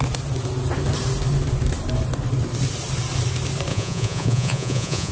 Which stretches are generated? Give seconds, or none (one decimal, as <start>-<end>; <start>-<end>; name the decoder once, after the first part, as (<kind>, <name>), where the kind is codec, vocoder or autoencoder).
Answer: 3.7-5.1 (vocoder, Vocos)